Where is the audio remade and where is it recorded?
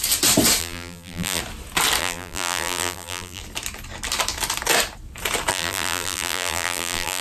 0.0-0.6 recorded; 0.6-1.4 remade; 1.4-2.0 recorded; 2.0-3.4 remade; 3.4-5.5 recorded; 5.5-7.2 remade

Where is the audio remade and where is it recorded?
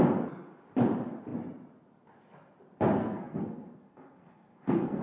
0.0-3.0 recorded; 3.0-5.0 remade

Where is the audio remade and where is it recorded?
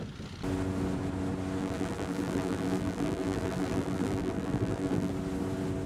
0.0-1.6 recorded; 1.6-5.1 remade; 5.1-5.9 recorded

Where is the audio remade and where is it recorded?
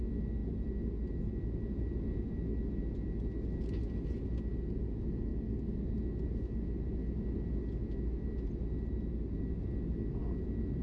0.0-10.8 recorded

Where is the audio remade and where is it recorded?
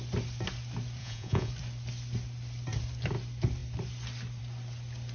0.0-1.0 recorded; 1.0-1.5 remade; 1.5-5.1 recorded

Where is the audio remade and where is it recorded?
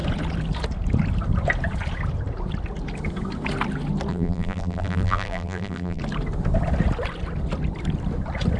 0.0-4.1 recorded; 4.1-6.0 remade; 6.0-8.6 recorded